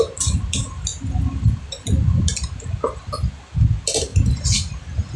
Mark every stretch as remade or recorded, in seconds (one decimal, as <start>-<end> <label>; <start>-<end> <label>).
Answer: 0.0-5.2 recorded